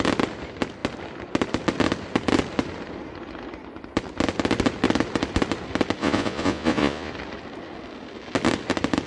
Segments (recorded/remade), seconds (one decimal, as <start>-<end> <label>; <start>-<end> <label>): 0.0-6.0 recorded; 6.0-7.1 remade; 7.1-9.1 recorded